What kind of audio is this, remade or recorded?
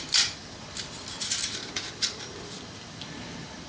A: recorded